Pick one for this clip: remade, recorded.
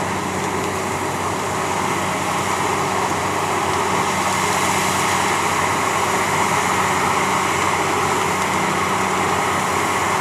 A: recorded